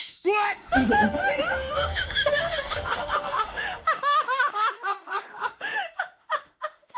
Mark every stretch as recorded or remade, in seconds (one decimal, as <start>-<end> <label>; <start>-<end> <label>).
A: 0.0-7.0 remade

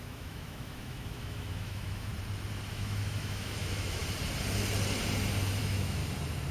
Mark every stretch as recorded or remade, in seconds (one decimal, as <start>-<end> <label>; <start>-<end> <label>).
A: 0.0-2.1 remade; 2.1-2.7 recorded; 2.7-4.0 remade; 4.0-5.6 recorded; 5.6-6.0 remade; 6.0-6.5 recorded

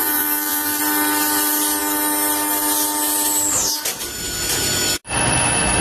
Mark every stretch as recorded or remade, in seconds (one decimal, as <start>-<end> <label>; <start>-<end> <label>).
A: 0.0-0.8 remade; 0.8-5.8 recorded

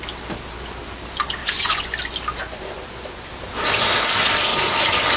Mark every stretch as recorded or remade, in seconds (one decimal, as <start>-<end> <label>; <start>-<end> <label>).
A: 0.0-1.4 recorded; 1.4-1.9 remade; 1.9-2.4 recorded; 2.4-3.3 remade; 3.3-4.5 recorded; 4.5-5.2 remade

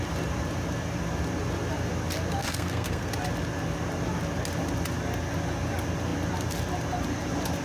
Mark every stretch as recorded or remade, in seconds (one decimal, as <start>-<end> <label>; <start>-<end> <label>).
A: 0.0-2.4 recorded; 2.4-3.1 remade; 3.1-7.6 recorded

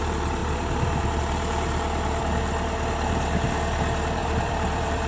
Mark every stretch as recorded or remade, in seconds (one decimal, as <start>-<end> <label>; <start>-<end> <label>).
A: 0.0-0.4 recorded; 0.4-1.2 remade; 1.2-4.2 recorded; 4.2-5.1 remade

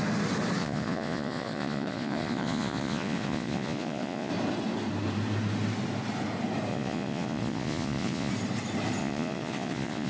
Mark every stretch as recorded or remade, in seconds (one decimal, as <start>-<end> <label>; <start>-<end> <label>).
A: 0.0-0.6 recorded; 0.6-4.3 remade; 4.3-6.7 recorded; 6.7-8.3 remade; 8.3-9.0 recorded; 9.0-10.1 remade